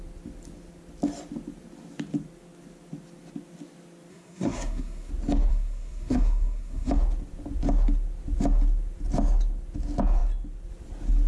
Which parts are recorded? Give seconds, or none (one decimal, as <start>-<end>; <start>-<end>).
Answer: 0.0-4.1; 5.1-5.5; 6.9-11.3

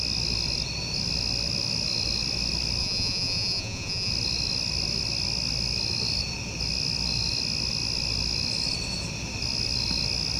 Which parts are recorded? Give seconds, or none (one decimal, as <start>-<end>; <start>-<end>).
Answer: 0.0-2.8; 4.1-10.4

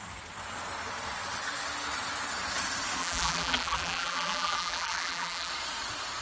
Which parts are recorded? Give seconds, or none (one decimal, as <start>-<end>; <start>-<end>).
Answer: 0.0-3.0; 5.5-6.2